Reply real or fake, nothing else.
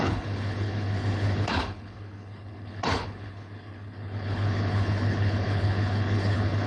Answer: fake